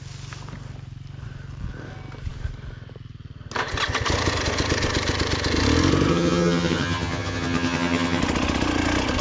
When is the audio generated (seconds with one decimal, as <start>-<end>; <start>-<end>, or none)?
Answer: 6.1-8.2